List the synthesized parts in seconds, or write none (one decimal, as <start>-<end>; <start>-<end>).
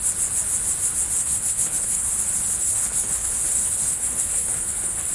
1.2-2.1; 2.6-5.1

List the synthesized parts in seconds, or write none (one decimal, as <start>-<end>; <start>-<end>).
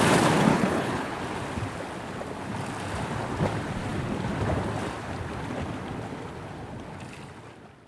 0.5-1.2